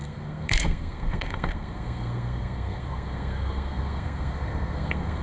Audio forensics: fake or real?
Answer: fake